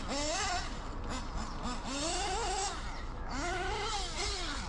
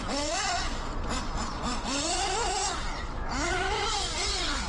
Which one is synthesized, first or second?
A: second